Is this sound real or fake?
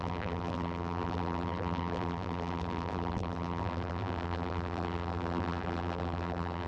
fake